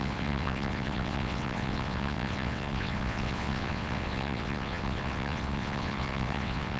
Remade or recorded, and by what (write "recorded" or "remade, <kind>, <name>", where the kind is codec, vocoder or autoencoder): remade, vocoder, WaveNeXt